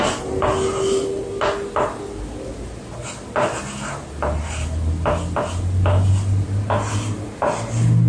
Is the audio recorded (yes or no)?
yes